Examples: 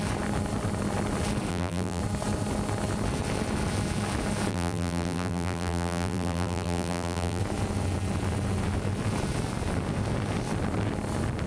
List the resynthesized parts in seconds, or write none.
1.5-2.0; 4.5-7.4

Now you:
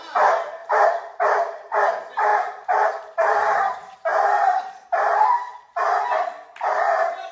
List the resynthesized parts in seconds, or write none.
0.0-5.5; 6.7-7.3

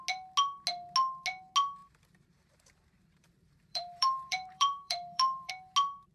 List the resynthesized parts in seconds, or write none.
1.8-5.5

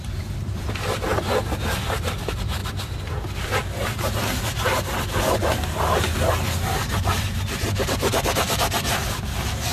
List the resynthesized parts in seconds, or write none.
0.0-2.6; 6.9-9.7